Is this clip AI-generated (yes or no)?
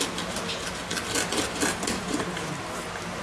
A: no